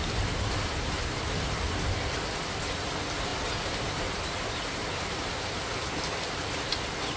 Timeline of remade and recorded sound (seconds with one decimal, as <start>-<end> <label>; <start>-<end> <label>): 0.0-7.2 recorded